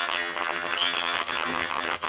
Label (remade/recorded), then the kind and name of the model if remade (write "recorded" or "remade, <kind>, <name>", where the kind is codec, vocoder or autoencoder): remade, vocoder, HiFi-GAN